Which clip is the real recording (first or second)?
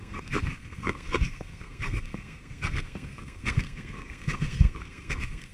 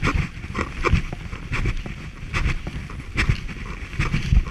second